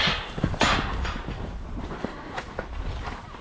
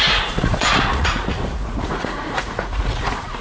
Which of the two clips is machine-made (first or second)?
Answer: second